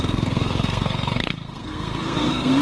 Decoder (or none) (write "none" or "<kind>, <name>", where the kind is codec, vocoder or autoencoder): codec, SNAC